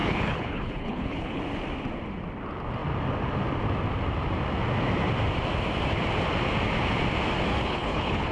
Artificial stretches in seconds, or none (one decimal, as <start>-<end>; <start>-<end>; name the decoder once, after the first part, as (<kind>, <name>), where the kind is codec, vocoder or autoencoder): 0.0-1.4 (codec, HILCodec); 7.5-8.3